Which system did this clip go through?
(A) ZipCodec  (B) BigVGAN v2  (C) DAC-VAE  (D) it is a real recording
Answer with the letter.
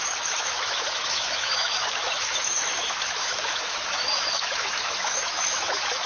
C